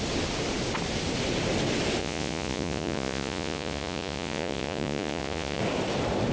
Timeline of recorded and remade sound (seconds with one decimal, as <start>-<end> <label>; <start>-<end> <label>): 0.0-2.0 recorded; 2.0-5.6 remade; 5.6-6.3 recorded